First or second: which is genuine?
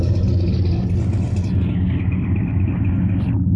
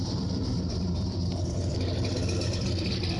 first